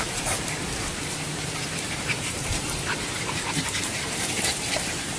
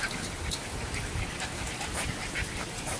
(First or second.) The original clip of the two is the second